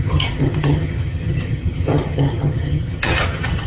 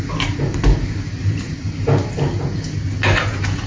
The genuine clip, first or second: second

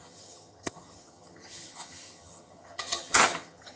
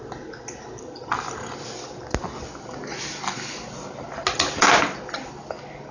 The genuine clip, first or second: second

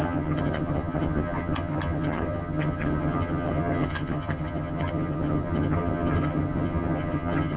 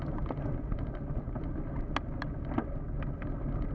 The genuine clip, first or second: second